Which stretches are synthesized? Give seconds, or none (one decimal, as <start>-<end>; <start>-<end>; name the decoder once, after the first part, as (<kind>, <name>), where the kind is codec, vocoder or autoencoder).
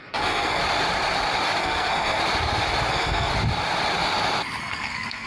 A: 0.0-0.6 (codec, SNAC); 1.6-2.2; 2.9-3.3; 4.6-5.3